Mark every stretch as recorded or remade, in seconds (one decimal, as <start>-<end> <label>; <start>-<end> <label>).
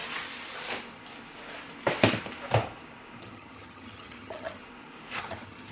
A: 0.0-3.2 recorded; 3.2-4.6 remade; 4.6-5.2 recorded; 5.2-5.7 remade